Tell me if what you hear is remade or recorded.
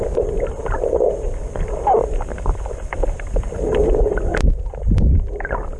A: recorded